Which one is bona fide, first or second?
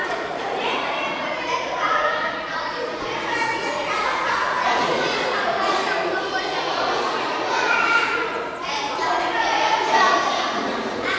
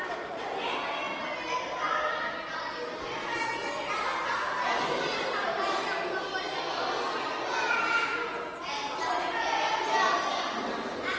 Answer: second